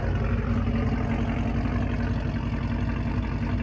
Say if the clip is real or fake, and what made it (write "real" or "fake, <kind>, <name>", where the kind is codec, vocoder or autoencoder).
real